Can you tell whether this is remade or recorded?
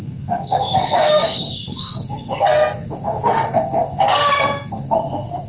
remade